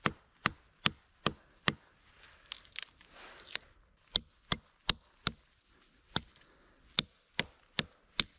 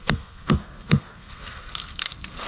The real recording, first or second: first